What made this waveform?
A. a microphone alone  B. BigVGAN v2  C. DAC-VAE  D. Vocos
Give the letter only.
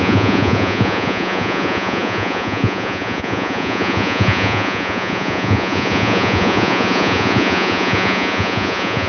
D